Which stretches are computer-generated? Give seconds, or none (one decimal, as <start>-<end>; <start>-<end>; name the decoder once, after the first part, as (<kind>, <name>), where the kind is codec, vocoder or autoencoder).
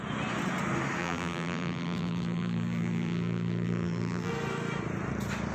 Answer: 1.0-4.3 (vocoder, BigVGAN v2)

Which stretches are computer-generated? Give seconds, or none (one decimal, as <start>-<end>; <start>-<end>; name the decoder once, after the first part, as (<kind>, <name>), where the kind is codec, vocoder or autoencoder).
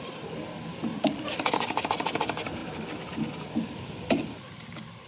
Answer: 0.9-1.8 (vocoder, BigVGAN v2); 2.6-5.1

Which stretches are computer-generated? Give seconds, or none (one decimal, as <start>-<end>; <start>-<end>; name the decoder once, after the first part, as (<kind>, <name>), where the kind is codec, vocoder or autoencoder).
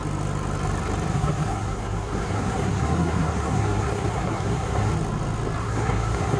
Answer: 1.1-4.9 (codec, SNAC); 5.6-6.4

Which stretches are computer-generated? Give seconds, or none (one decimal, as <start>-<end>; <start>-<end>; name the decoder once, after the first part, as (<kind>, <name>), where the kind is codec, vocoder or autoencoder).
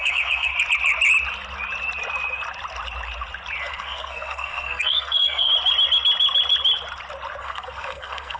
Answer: 0.0-0.5 (codec, SNAC); 3.6-5.5; 7.4-8.4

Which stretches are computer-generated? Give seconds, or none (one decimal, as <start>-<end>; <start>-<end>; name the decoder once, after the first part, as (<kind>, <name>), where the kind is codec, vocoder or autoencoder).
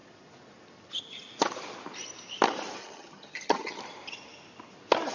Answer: 2.8-3.8 (vocoder, HiFi-GAN)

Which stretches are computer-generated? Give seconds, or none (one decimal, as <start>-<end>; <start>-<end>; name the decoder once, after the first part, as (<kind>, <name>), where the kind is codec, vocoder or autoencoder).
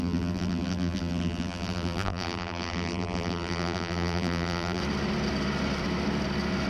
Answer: 0.0-4.8 (vocoder, BigVGAN v2)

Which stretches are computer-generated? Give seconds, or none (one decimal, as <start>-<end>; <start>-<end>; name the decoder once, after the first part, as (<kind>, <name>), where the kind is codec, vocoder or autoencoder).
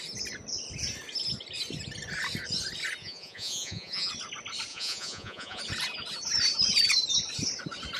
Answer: 3.0-4.1 (vocoder, Vocos); 4.7-5.6